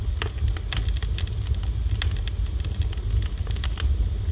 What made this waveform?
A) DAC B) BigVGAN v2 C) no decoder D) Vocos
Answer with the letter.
C